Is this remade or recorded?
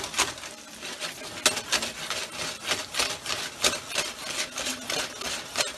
recorded